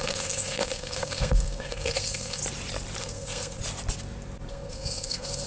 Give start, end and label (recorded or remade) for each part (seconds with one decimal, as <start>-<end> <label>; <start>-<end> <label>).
0.0-2.4 remade; 2.4-3.0 recorded; 3.0-3.6 remade; 3.6-4.5 recorded; 4.5-5.5 remade